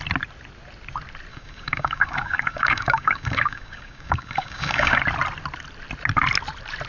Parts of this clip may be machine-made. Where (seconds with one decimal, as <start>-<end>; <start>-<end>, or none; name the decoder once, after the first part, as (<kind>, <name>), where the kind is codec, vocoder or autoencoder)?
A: 1.3-5.0 (codec, DAC)